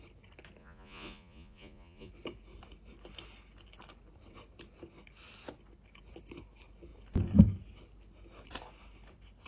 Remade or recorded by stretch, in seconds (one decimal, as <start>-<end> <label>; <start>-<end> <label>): 0.0-0.6 recorded; 0.6-2.1 remade; 2.1-9.5 recorded